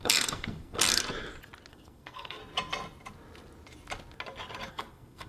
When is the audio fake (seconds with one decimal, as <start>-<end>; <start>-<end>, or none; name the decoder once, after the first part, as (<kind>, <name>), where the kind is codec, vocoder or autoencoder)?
0.0-1.0 (codec, SNAC); 1.7-2.4; 4.7-5.3